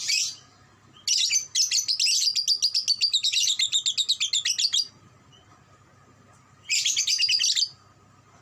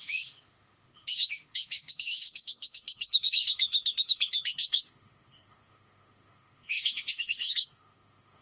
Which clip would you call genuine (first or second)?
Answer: first